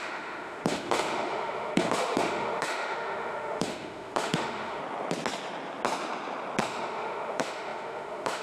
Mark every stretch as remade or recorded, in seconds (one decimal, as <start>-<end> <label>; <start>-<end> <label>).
0.0-4.8 remade; 4.8-6.6 recorded; 6.6-8.4 remade